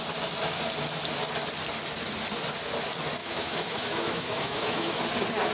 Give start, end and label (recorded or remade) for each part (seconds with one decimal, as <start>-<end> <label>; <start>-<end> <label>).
0.0-3.2 recorded; 3.2-5.0 remade; 5.0-5.5 recorded